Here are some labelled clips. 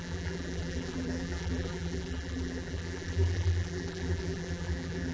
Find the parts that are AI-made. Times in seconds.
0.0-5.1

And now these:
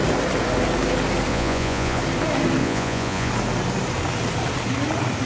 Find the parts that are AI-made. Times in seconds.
1.3-2.0; 2.6-3.3

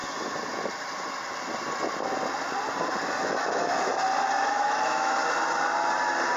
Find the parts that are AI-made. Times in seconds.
3.2-3.9; 4.4-5.2

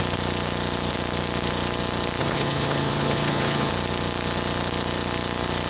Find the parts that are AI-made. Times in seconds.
2.2-3.7

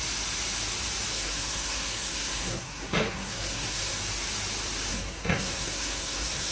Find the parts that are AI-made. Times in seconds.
1.1-4.0; 4.9-6.5

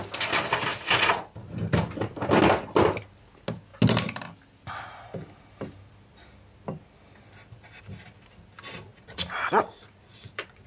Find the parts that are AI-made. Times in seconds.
0.7-1.2; 8.9-10.7